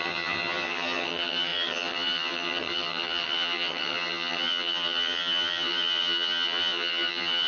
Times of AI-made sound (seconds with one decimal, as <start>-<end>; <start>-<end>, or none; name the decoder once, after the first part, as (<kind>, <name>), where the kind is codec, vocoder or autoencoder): 0.0-7.5 (vocoder, HiFi-GAN)